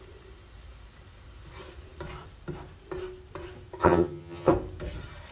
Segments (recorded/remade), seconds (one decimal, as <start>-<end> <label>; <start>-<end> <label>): 0.0-3.8 recorded; 3.8-4.5 remade; 4.5-5.3 recorded